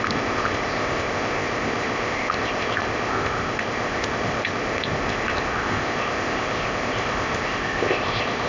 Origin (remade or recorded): remade